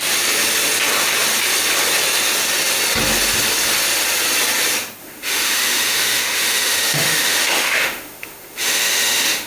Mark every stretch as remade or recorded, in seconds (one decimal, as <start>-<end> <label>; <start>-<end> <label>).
0.0-5.0 recorded; 5.0-9.5 remade